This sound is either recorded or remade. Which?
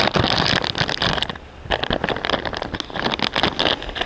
recorded